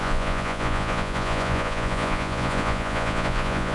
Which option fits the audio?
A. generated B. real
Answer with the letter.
A